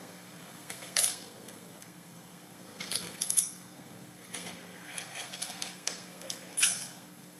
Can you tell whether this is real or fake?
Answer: fake